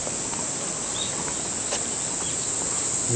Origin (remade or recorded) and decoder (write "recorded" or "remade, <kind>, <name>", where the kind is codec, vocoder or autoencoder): recorded